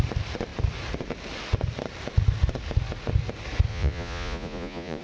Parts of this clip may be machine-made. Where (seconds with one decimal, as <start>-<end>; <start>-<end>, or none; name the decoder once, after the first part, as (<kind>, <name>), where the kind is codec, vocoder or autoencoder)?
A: 3.7-5.0 (vocoder, Vocos)